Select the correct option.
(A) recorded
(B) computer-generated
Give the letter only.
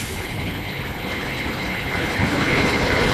B